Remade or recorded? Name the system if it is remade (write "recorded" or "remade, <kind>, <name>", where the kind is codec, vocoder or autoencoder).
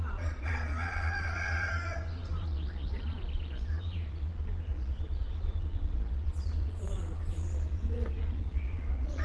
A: remade, vocoder, Vocos